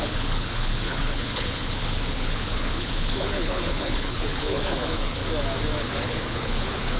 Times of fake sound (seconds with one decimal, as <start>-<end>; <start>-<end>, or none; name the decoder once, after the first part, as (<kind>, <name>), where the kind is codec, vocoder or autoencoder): 0.0-5.2 (codec, HILCodec); 5.8-7.0